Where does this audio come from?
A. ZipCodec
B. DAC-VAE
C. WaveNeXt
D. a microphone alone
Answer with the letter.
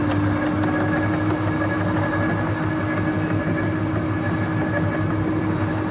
D